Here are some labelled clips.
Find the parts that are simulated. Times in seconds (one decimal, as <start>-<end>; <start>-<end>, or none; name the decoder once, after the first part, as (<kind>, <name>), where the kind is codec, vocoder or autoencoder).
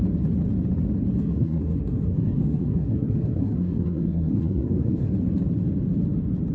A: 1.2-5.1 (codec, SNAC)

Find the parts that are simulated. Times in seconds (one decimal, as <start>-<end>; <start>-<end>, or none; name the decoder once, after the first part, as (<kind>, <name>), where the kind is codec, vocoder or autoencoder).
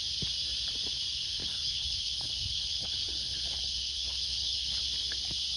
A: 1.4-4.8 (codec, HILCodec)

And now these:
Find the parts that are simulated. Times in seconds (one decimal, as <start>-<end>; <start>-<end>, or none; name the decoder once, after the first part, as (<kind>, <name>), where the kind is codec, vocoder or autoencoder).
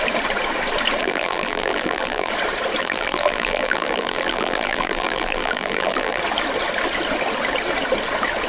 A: 1.0-2.3 (vocoder, BigVGAN v2); 2.8-6.2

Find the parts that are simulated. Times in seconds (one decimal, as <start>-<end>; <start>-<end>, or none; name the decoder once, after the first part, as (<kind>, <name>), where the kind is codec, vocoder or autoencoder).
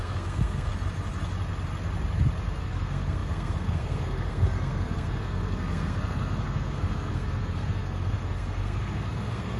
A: 0.0-0.7 (codec, SNAC); 2.6-9.6